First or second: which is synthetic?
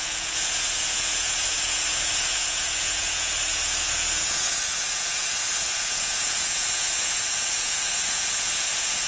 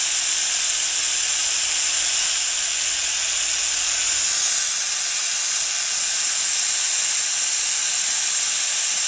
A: first